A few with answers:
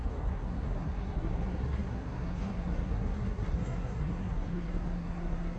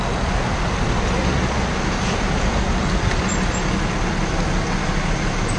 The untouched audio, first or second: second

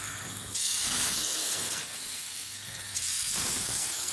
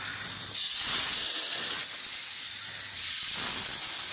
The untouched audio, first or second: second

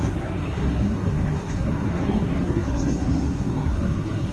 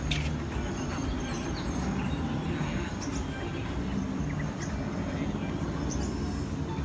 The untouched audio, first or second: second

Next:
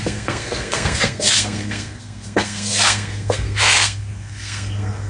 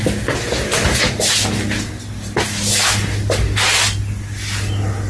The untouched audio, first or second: second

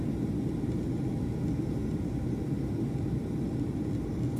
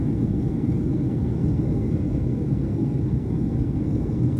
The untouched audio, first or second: first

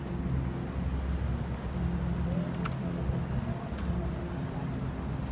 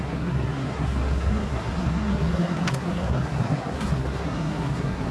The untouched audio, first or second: first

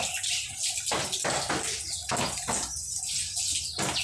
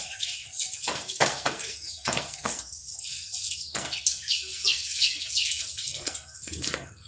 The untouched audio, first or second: first